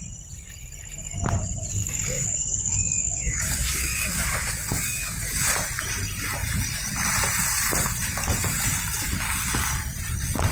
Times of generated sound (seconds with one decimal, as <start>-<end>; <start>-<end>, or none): 1.8-5.5

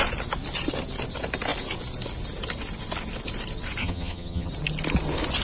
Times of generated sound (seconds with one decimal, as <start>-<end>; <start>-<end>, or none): 3.8-4.5

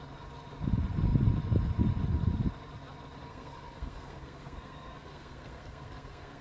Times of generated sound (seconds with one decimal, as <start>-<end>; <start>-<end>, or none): 3.3-6.4

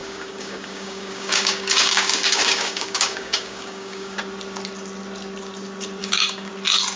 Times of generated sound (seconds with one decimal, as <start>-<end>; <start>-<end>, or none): 0.0-4.2; 6.0-6.5

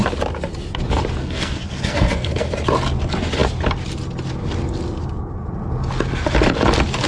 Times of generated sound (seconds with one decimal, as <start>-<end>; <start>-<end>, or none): 1.2-2.5

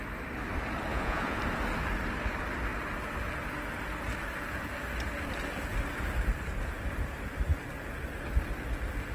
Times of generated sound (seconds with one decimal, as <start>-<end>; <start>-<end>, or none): 0.9-1.4